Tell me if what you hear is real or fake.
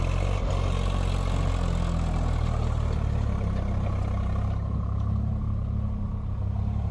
real